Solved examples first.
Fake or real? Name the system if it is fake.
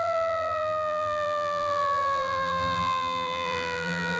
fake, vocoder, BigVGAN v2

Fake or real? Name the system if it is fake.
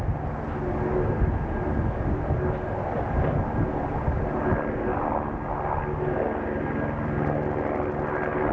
real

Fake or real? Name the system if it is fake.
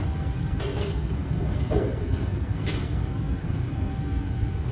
fake, codec, SNAC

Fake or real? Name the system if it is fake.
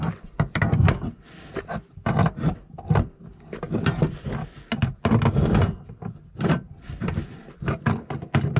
real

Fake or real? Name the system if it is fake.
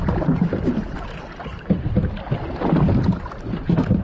real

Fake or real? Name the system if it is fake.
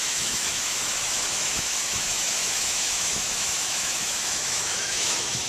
fake, autoencoder, DAC-VAE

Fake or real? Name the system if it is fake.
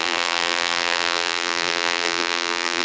fake, vocoder, BigVGAN v2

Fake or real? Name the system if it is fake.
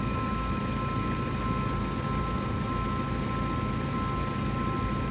real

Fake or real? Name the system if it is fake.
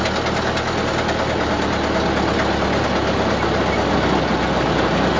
real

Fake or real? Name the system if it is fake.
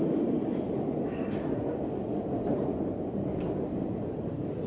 fake, vocoder, BigVGAN v2